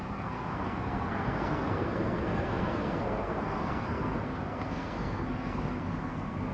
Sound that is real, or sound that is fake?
fake